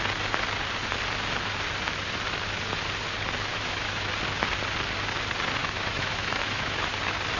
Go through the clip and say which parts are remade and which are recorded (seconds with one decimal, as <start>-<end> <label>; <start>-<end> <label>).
0.0-3.5 recorded; 3.5-4.1 remade; 4.1-5.6 recorded; 5.6-6.9 remade; 6.9-7.4 recorded

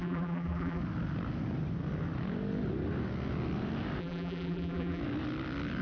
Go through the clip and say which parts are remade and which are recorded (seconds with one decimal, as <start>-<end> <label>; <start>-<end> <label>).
0.0-0.8 remade; 0.8-4.0 recorded; 4.0-5.0 remade; 5.0-5.8 recorded

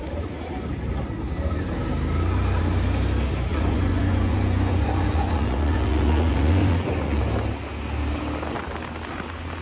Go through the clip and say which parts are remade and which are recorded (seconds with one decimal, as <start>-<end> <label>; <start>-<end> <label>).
0.0-3.5 recorded; 3.5-7.2 remade; 7.2-9.6 recorded

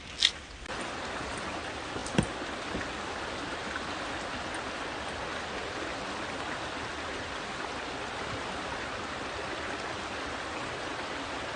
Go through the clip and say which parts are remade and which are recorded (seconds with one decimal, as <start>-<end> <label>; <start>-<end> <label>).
0.0-11.6 recorded